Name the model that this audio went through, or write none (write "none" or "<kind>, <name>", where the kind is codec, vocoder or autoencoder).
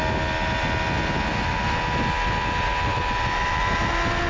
none